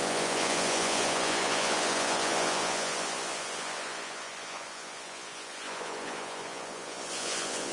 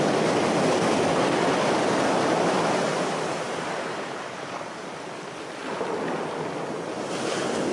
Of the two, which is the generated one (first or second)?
first